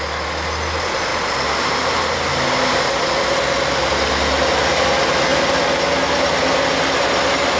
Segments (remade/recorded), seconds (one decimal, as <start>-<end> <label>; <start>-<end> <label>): 0.0-7.6 recorded